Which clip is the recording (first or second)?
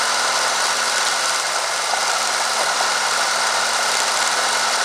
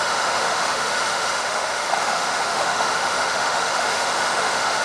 first